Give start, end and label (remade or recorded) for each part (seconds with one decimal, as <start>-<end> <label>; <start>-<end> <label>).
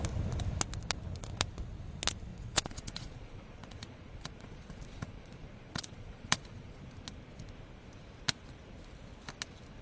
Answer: 0.0-2.3 recorded; 2.3-6.8 remade; 6.8-9.8 recorded